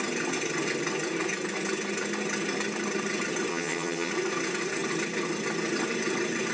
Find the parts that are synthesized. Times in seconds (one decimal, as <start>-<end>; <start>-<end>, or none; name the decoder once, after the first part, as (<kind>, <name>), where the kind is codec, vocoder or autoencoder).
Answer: 3.5-4.1 (vocoder, HiFi-GAN)